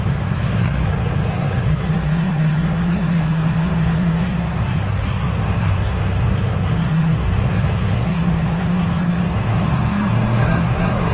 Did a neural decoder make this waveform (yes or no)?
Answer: yes